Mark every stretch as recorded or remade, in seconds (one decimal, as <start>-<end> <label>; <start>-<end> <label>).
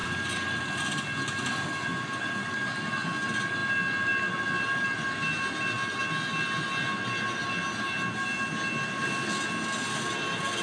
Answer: 0.0-10.6 recorded